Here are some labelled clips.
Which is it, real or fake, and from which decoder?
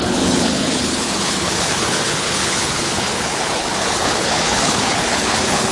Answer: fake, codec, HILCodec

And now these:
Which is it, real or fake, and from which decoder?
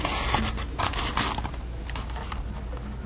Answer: real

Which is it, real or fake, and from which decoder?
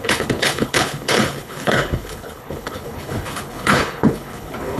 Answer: fake, codec, HILCodec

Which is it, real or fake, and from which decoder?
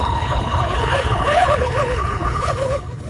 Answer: fake, codec, HILCodec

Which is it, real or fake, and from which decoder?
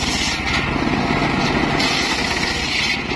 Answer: real